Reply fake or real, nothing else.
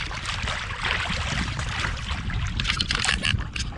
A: real